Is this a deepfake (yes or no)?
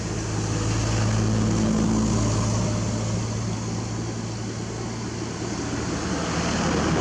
no